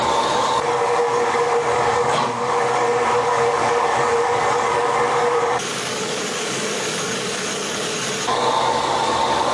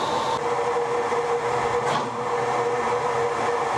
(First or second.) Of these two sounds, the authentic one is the second